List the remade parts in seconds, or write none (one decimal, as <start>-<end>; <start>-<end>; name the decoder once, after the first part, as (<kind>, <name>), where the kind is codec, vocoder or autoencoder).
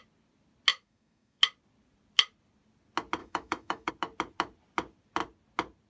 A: 0.7-1.4 (autoencoder, DAC-VAE); 3.2-3.9